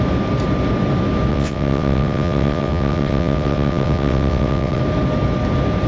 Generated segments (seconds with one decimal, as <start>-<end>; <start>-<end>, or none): 1.3-4.8